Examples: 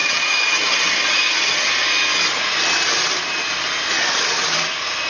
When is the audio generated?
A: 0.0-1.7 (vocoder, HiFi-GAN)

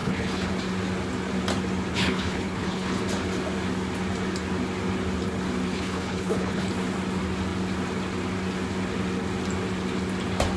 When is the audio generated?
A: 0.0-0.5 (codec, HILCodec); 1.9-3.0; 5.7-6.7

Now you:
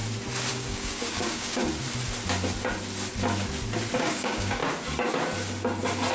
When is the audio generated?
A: 0.5-1.6 (codec, DAC); 4.0-4.6